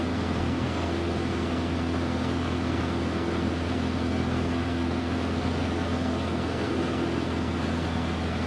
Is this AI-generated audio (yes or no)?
yes